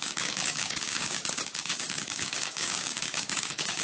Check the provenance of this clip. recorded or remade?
remade